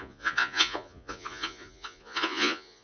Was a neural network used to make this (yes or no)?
yes